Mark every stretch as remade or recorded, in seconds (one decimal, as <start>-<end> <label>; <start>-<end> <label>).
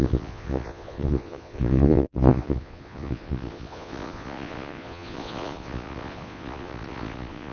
0.0-7.5 remade